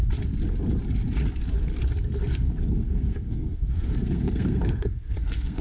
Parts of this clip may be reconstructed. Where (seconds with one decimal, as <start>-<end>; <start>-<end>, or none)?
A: 2.2-5.6